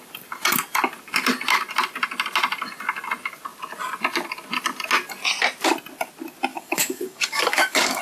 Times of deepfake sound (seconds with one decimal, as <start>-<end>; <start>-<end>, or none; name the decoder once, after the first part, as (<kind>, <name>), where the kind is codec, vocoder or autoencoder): 6.5-8.0 (codec, DAC)